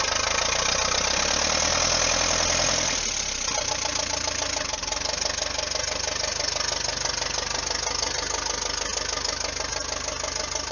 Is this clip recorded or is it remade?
recorded